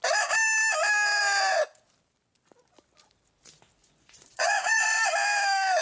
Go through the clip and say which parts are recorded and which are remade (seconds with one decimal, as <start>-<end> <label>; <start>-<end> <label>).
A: 0.0-3.8 recorded; 3.8-4.9 remade; 4.9-5.8 recorded